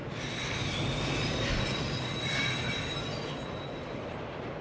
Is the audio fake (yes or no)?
no